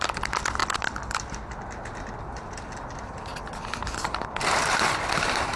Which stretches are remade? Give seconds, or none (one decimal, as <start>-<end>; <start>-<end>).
0.0-3.3; 3.8-5.6